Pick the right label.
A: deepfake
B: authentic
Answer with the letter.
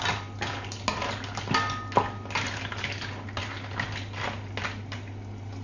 B